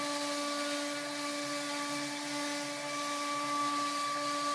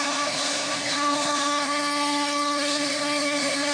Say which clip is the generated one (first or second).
second